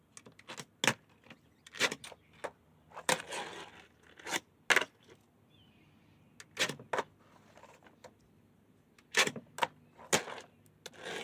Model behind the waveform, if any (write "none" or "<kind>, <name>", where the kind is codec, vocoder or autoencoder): none